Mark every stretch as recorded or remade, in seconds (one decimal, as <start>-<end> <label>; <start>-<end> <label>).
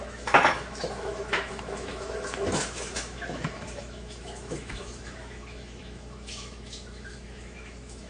0.0-8.1 remade